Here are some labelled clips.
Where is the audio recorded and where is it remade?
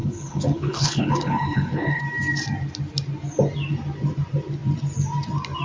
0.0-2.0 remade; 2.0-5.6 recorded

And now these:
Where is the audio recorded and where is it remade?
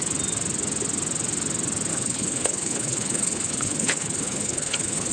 0.0-1.9 recorded; 1.9-5.1 remade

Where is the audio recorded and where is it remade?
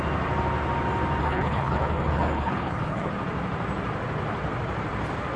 0.0-1.2 recorded; 1.2-3.1 remade; 3.1-5.4 recorded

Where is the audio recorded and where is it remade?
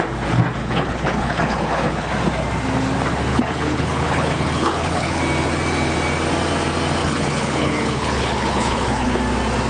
0.0-0.6 recorded; 0.6-2.1 remade; 2.1-3.3 recorded; 3.3-5.2 remade; 5.2-7.0 recorded; 7.0-9.2 remade; 9.2-9.7 recorded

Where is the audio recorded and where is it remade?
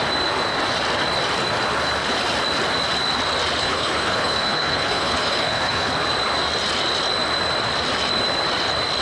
0.0-3.6 recorded; 3.6-5.9 remade; 5.9-9.0 recorded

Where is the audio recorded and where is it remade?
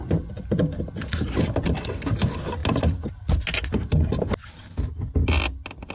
0.0-5.9 recorded